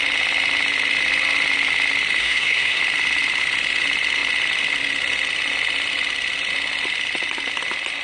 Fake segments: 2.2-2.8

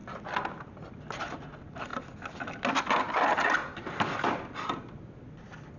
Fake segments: none

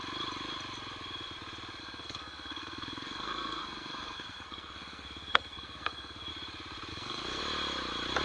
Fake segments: 1.8-6.3; 6.9-7.4

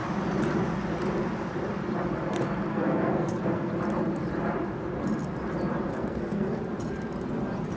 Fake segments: 2.7-3.7; 5.9-6.6

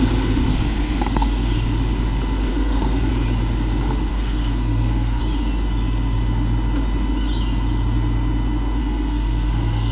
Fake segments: 0.5-1.5; 2.5-3.1; 4.1-5.2; 8.8-9.9

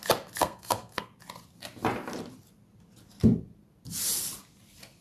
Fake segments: 0.4-1.1

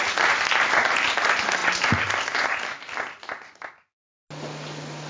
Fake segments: none

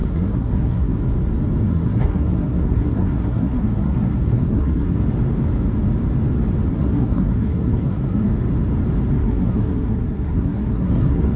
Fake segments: 0.0-1.0; 1.6-5.0; 6.7-8.3; 9.1-11.4